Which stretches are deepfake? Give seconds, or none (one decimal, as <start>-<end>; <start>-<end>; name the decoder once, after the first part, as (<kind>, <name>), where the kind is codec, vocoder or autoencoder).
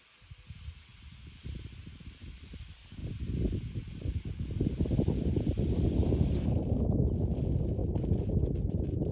none